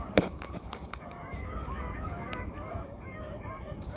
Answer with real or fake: fake